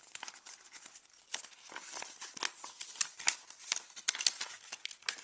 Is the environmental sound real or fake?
real